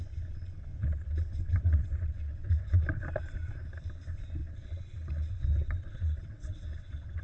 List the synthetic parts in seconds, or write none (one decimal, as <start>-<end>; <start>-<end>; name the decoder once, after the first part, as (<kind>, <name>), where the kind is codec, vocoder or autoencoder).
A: 0.7-2.8 (vocoder, WaveNeXt); 4.4-7.2